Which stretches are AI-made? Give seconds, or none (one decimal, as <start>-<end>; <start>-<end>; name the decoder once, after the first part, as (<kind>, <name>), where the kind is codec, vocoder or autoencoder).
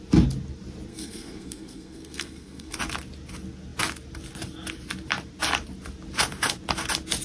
0.9-2.8 (codec, SNAC)